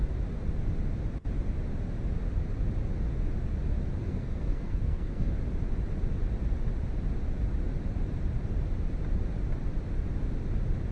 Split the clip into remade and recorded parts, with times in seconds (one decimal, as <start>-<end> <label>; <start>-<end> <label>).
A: 0.0-4.0 recorded; 4.0-5.3 remade; 5.3-10.9 recorded